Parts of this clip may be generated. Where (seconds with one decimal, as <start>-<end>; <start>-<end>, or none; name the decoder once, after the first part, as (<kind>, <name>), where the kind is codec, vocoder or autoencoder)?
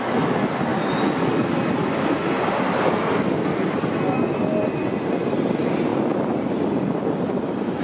none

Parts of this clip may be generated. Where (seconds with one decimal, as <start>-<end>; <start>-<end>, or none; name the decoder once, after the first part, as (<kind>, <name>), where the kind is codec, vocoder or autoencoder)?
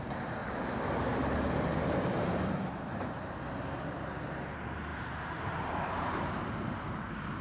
0.0-7.4 (vocoder, BigVGAN v2)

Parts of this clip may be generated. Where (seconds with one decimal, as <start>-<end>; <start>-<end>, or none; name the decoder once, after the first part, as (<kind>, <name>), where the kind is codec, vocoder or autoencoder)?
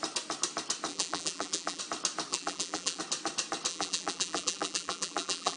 0.9-1.8 (vocoder, BigVGAN v2); 2.3-3.0; 3.7-5.6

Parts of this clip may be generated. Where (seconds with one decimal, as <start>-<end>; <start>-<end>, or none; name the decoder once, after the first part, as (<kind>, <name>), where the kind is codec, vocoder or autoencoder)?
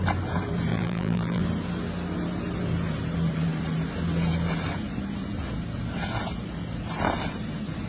0.7-1.4 (vocoder, BigVGAN v2)